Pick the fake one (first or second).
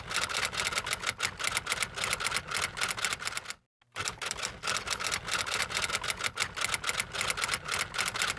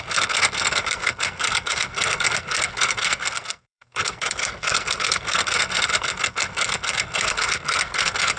second